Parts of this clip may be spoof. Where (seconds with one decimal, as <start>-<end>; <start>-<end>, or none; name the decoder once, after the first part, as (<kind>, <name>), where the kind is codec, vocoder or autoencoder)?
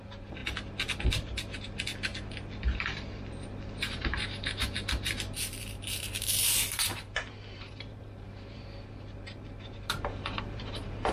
0.0-0.4 (vocoder, BigVGAN v2); 1.0-2.1; 3.3-11.1